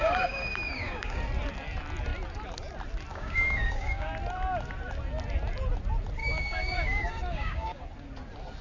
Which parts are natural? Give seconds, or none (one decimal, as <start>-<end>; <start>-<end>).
1.2-3.1; 4.1-6.2; 7.8-8.6